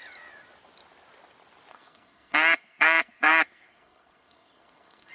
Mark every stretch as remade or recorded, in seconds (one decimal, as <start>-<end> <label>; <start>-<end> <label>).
0.0-1.7 recorded; 1.7-5.1 remade